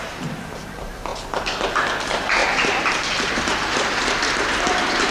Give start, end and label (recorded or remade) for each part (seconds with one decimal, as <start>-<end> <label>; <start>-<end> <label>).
0.0-1.1 remade; 1.1-2.0 recorded; 2.0-5.1 remade